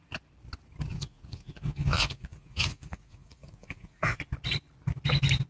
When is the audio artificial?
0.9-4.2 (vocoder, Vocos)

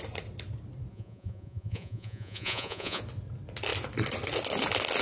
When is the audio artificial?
0.9-3.0 (vocoder, Vocos)

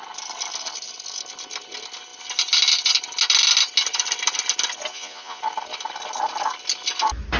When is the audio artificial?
4.9-5.4 (vocoder, Vocos)

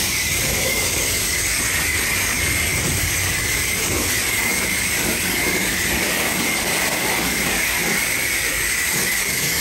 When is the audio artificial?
0.0-9.6 (codec, DAC)

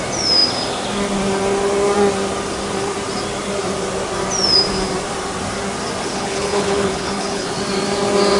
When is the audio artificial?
6.1-7.5 (codec, HILCodec)